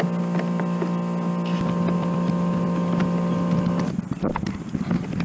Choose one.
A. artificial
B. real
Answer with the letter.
B